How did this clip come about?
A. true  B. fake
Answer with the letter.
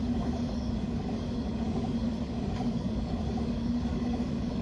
B